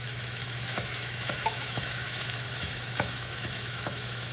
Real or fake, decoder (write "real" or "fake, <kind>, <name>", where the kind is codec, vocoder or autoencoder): fake, autoencoder, DAC-VAE